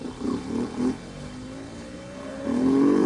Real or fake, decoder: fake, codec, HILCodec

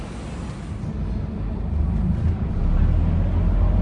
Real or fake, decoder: real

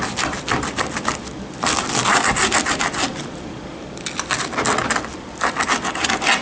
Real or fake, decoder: real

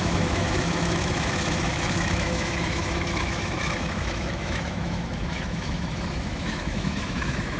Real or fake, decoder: fake, autoencoder, DAC-VAE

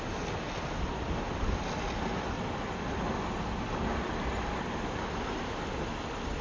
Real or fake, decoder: real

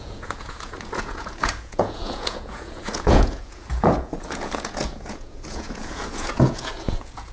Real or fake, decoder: fake, vocoder, Vocos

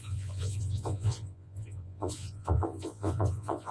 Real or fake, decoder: fake, vocoder, Vocos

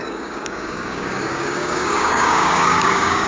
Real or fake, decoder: fake, codec, DAC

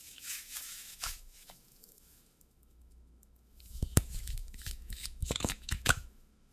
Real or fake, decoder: fake, autoencoder, DAC-VAE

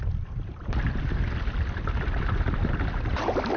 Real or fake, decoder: real